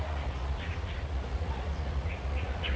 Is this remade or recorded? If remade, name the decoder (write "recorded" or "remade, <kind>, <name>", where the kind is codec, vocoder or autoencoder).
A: remade, vocoder, Vocos